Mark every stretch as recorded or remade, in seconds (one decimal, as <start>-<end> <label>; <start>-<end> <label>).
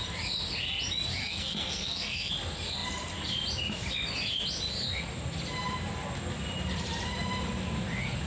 0.0-1.2 recorded; 1.2-2.3 remade; 2.3-8.3 recorded